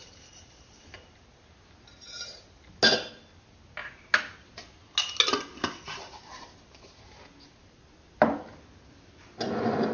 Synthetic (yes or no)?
no